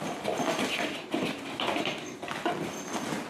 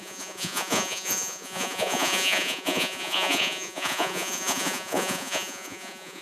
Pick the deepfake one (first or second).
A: second